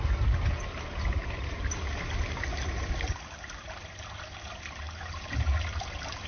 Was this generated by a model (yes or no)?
no